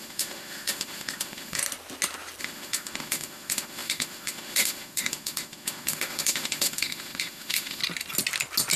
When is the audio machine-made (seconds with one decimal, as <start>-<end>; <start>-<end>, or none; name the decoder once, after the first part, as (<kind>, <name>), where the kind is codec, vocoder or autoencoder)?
0.0-1.6 (autoencoder, DAC-VAE); 2.4-7.8